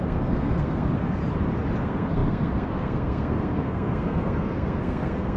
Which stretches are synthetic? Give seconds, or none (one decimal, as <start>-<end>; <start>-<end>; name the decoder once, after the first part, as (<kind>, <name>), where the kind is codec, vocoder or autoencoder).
0.0-1.2 (codec, SNAC); 1.8-5.4